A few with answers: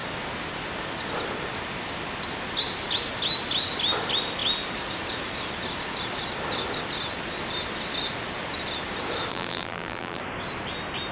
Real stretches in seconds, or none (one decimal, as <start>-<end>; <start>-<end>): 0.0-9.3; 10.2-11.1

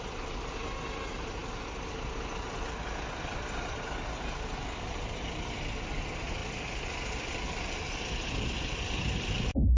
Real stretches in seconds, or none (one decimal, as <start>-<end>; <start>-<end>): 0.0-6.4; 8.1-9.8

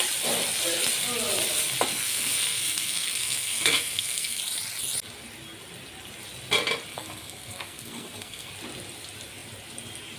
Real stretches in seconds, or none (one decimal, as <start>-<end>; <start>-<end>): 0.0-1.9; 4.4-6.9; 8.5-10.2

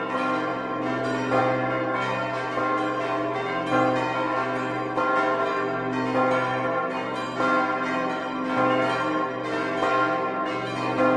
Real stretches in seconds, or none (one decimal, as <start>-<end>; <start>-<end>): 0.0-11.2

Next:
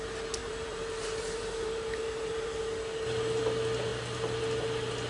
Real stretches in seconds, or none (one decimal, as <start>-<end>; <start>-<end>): 0.0-0.4; 2.6-5.1

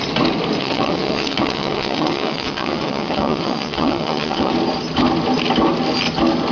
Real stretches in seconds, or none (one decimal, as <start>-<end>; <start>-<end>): 0.0-0.6; 4.5-6.5